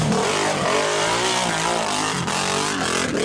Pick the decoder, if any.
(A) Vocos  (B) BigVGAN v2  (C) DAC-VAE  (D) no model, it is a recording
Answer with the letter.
D